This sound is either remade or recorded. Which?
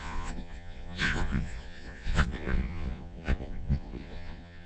remade